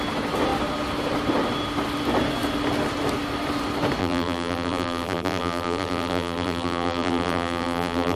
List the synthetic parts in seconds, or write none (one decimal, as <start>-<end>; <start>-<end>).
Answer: 4.0-8.2